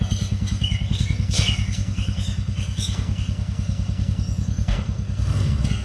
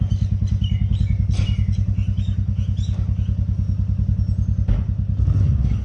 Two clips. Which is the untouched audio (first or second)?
second